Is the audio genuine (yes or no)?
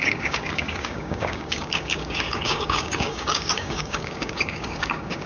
no